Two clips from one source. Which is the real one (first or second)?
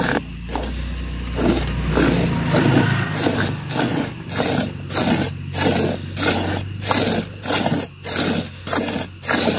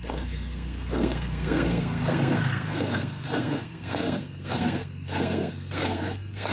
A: first